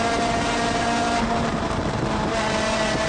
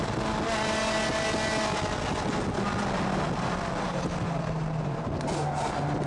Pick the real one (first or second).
second